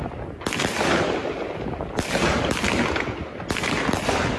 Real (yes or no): yes